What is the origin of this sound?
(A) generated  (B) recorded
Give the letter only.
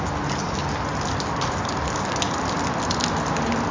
B